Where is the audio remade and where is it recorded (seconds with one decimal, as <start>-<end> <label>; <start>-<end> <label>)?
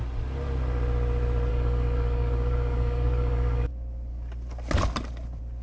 0.0-1.5 recorded; 1.5-3.7 remade; 3.7-5.6 recorded